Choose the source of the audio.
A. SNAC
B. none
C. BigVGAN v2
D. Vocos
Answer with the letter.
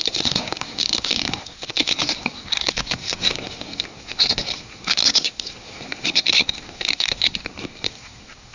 A